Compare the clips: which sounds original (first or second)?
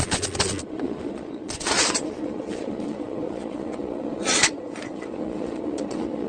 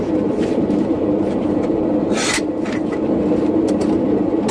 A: second